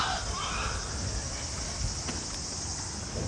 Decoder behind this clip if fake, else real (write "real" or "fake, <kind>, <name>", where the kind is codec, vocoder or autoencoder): real